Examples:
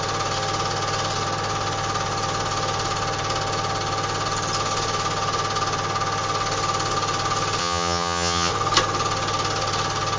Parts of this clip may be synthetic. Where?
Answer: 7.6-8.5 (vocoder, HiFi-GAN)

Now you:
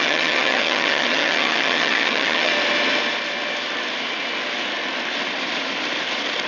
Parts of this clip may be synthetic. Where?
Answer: 0.0-2.5 (vocoder, HiFi-GAN)

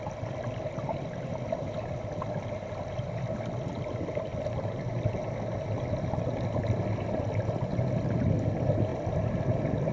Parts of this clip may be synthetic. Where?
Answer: none

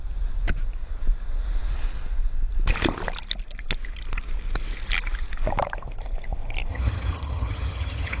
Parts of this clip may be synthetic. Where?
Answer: 6.7-8.2 (vocoder, HiFi-GAN)

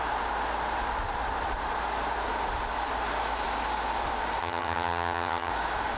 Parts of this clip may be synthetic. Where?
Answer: 4.4-5.5 (vocoder, HiFi-GAN)

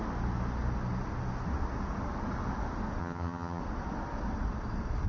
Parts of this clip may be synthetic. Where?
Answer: 3.0-3.6 (vocoder, HiFi-GAN)